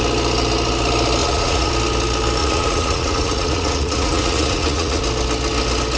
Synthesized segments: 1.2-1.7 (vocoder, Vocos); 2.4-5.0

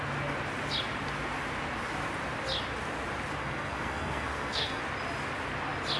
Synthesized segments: 3.4-4.8 (codec, SNAC)

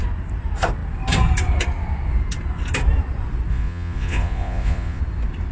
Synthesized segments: 3.5-5.0 (vocoder, Vocos)

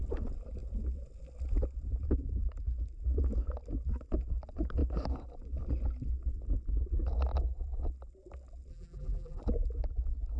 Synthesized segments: 8.7-9.4 (vocoder, BigVGAN v2)

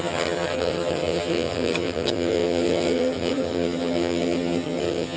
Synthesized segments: 0.0-5.2 (vocoder, HiFi-GAN)